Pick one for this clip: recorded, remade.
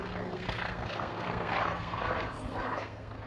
remade